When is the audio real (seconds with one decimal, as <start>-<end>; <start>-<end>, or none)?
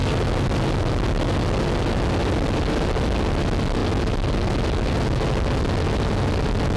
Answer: 0.0-6.8